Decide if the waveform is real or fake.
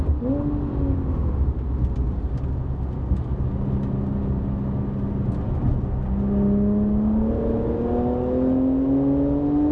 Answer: real